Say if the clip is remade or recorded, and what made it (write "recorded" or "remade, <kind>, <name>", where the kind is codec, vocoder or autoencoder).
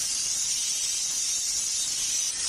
remade, vocoder, BigVGAN v2